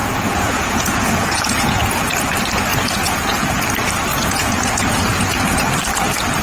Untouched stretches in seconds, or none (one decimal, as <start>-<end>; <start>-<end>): 2.1-2.7; 3.6-4.1; 5.7-6.4